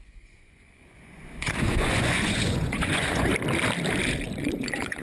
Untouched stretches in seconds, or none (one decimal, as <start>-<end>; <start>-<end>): 3.3-4.4